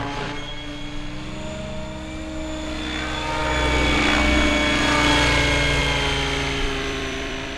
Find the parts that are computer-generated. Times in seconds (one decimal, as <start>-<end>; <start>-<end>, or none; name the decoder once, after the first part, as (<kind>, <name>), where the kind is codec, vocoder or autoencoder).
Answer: 5.8-7.6 (vocoder, BigVGAN v2)